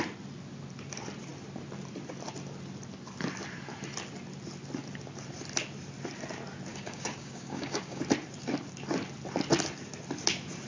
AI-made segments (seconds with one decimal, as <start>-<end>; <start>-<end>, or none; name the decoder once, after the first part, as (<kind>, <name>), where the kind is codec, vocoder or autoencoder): 6.7-8.0 (codec, DAC)